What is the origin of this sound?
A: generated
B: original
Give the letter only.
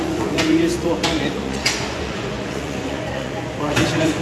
A